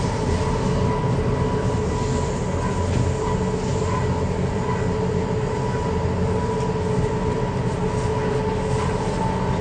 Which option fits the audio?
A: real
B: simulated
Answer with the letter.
A